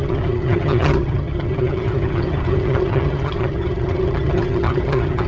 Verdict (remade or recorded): remade